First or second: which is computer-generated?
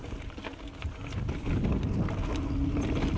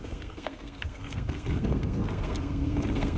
second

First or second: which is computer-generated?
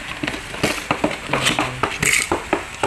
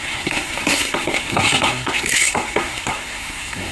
second